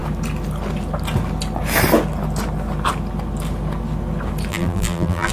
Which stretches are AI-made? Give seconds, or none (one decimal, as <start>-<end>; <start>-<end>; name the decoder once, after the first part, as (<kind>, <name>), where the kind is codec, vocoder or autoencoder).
4.5-5.3 (vocoder, BigVGAN v2)